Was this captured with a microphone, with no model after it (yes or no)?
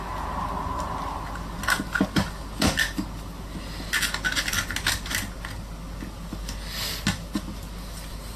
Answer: yes